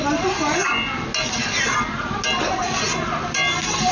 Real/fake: real